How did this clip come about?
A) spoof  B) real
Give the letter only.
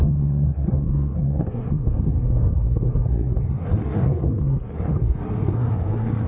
A